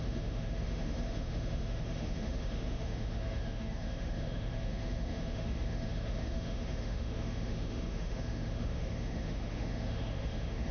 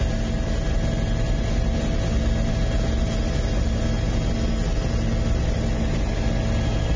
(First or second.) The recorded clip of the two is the second